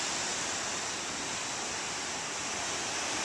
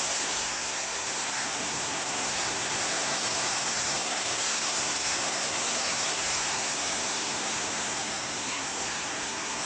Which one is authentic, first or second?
first